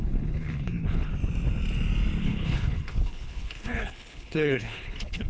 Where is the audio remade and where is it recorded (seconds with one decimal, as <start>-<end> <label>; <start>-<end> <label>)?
0.0-1.1 remade; 1.1-2.2 recorded; 2.2-5.3 remade